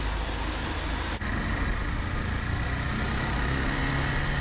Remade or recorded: recorded